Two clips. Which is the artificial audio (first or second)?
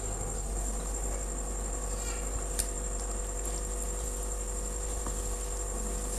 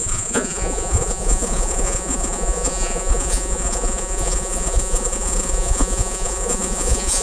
second